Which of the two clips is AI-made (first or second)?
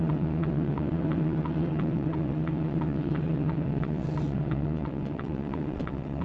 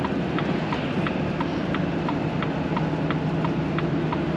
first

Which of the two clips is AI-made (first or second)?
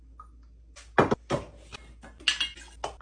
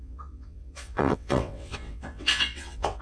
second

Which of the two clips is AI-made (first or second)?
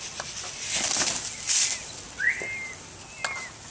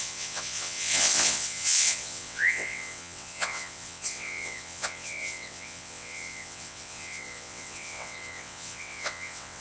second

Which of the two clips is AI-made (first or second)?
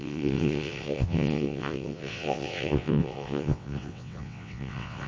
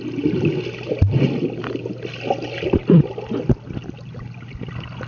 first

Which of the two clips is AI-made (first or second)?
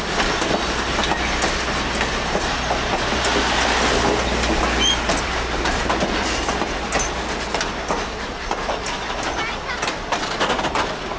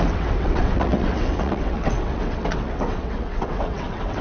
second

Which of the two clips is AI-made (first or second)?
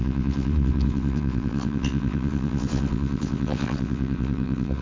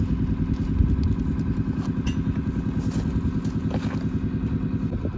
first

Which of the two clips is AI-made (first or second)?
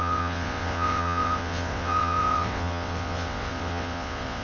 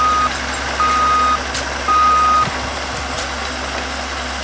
first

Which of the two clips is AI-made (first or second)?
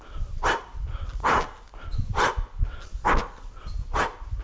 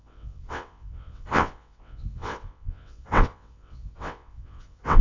second